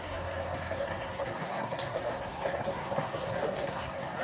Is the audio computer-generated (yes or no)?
yes